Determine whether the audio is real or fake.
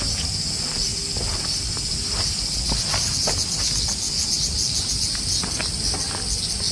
real